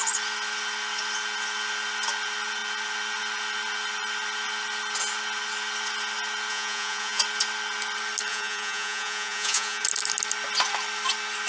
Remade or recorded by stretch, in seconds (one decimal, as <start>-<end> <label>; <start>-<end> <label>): 0.0-6.5 recorded; 6.5-7.2 remade; 7.2-8.3 recorded; 8.3-9.8 remade; 9.8-11.5 recorded